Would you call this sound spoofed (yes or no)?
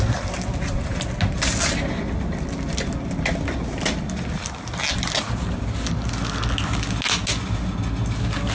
no